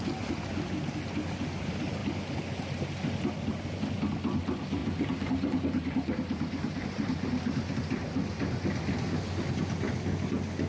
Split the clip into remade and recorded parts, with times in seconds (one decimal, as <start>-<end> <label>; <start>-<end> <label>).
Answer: 0.0-4.8 recorded; 4.8-7.7 remade; 7.7-10.7 recorded